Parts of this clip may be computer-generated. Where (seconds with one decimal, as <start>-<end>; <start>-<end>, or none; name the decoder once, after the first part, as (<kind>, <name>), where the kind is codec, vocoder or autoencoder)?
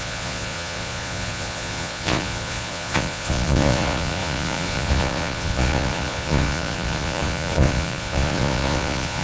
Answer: 0.0-9.2 (vocoder, Vocos)